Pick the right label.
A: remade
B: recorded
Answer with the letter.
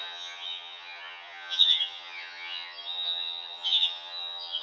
A